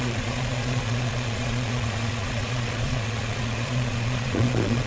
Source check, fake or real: fake